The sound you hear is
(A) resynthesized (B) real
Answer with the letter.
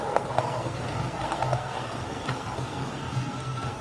A